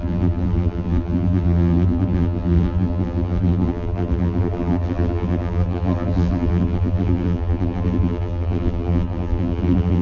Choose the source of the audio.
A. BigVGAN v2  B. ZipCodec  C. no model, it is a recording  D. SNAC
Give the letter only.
A